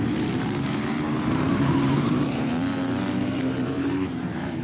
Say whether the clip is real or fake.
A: fake